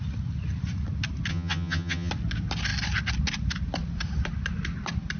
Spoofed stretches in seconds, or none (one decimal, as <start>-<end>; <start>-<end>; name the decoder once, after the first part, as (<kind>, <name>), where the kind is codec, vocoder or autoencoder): 1.3-2.1 (vocoder, HiFi-GAN)